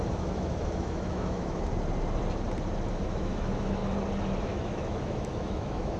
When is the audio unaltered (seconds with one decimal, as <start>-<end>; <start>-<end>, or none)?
1.7-2.9; 3.8-4.4